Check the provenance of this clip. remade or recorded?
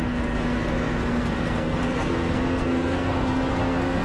remade